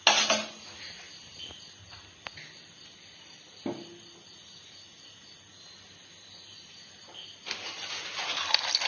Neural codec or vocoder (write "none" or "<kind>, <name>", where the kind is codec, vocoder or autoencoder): none